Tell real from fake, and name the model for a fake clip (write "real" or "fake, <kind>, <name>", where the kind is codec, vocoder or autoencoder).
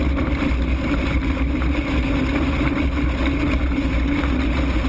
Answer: real